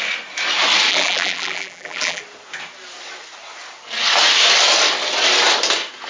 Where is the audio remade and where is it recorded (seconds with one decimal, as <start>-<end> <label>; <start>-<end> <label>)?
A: 0.0-0.9 recorded; 0.9-2.2 remade; 2.2-6.1 recorded